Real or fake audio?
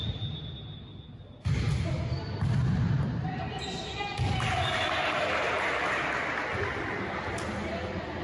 real